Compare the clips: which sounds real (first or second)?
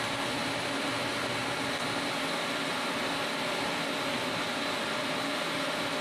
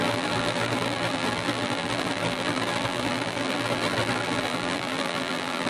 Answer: first